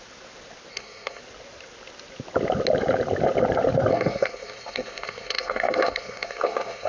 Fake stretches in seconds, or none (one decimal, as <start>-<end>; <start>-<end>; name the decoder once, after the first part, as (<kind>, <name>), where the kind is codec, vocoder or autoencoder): 0.7-1.2 (codec, SNAC); 3.9-6.9